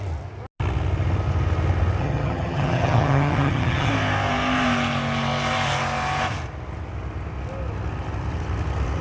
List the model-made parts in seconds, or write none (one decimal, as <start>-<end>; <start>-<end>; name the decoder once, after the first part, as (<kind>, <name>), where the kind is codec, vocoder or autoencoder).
2.0-3.9 (vocoder, HiFi-GAN)